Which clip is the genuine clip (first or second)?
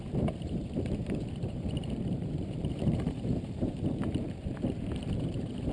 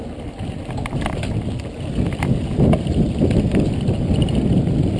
second